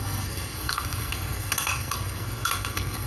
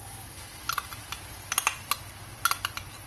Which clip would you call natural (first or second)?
second